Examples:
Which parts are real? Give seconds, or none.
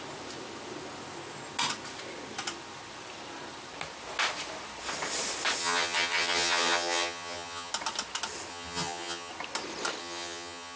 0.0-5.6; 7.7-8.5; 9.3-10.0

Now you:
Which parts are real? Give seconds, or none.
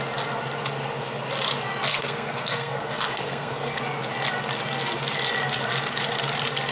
0.0-1.9; 3.8-6.7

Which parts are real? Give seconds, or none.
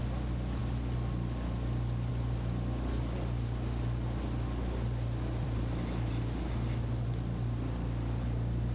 0.0-8.7